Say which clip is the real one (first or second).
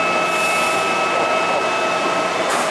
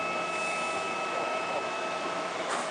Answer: first